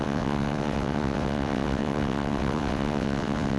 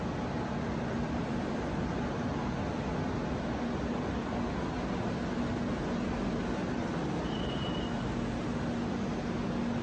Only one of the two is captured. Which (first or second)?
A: second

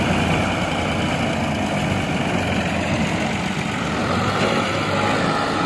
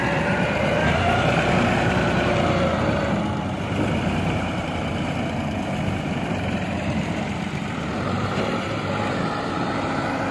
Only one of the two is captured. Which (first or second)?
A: first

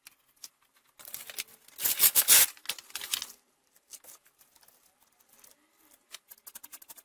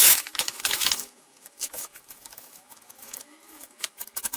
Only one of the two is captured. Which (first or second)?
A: first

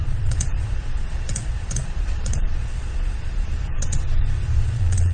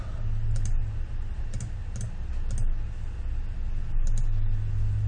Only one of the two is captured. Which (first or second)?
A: second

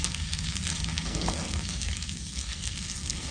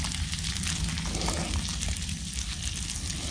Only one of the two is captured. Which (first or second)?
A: second